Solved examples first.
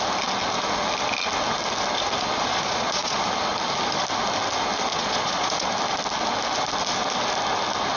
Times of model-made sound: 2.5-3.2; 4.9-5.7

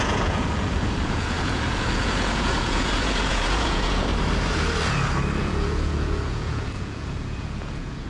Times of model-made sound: 0.0-4.1; 5.4-8.1

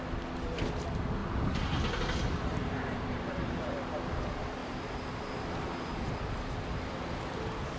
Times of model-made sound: 1.2-4.0; 4.6-7.2

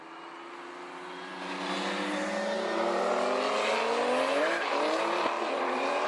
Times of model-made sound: none

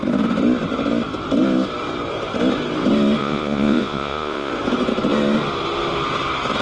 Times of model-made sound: 3.2-4.5

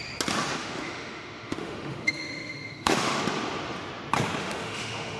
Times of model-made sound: 0.6-3.2; 4.4-5.2

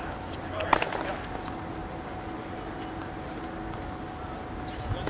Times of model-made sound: none